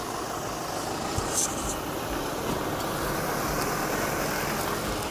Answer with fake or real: real